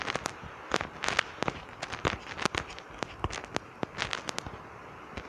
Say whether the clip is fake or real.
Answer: real